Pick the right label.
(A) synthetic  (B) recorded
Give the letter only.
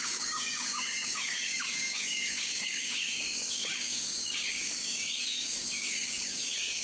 A